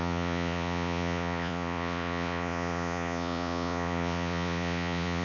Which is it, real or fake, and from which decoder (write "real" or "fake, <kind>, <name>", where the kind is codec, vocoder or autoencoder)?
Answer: fake, vocoder, Vocos